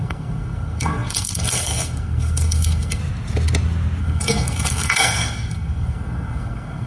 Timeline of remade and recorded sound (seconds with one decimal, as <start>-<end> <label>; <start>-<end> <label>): 0.0-3.0 remade; 3.0-4.0 recorded; 4.0-6.9 remade

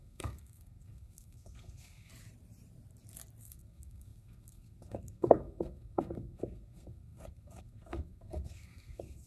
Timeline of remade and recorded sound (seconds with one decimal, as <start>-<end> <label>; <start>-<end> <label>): 0.0-2.1 remade; 2.1-3.4 recorded; 3.4-9.3 remade

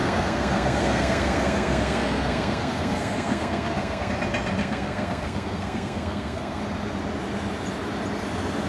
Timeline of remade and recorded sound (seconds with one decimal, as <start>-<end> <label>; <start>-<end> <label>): 0.0-4.1 remade; 4.1-4.6 recorded; 4.6-6.6 remade; 6.6-8.7 recorded

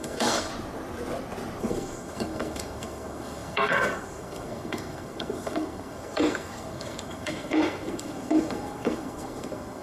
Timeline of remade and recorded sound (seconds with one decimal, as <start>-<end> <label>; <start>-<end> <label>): 0.0-0.5 remade; 0.5-1.6 recorded; 1.6-9.8 remade